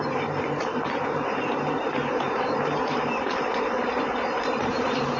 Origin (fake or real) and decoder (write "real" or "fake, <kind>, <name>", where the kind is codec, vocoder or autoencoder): fake, vocoder, BigVGAN v2